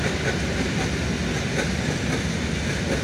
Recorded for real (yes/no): yes